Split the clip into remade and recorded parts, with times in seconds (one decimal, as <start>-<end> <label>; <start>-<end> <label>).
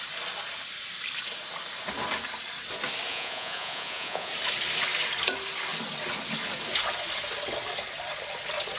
0.0-3.1 recorded; 3.1-4.3 remade; 4.3-8.8 recorded